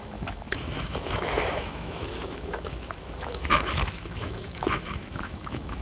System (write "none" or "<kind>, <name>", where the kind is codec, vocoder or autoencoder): autoencoder, DAC-VAE